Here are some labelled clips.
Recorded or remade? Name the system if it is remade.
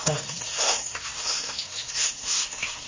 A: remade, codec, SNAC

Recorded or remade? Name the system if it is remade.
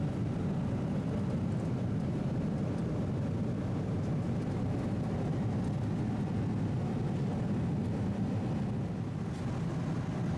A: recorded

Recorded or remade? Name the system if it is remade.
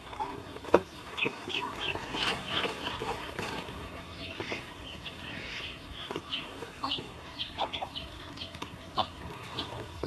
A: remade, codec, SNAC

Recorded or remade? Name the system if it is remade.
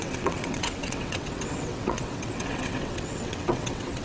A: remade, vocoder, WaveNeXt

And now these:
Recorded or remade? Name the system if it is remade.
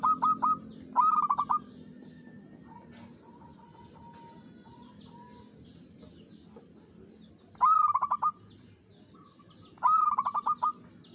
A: recorded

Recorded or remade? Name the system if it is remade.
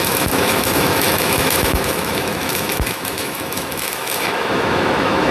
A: remade, autoencoder, DAC-VAE